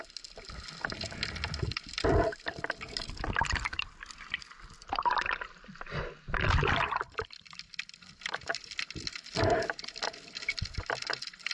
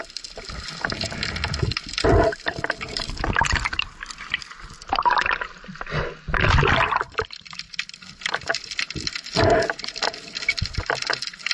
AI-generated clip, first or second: first